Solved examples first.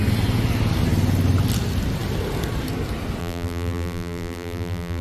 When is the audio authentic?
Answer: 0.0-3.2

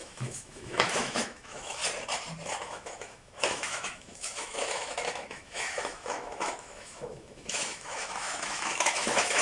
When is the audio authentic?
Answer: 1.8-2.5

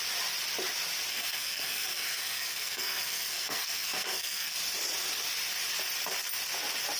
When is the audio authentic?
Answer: 0.0-1.1; 4.6-7.0

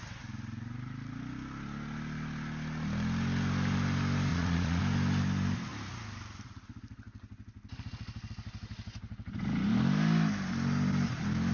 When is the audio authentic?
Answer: 0.0-4.3; 4.8-11.5